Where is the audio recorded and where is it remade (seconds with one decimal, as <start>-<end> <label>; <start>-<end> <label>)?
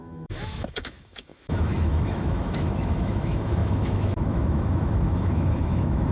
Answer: 0.0-6.1 remade